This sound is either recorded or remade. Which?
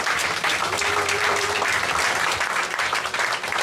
remade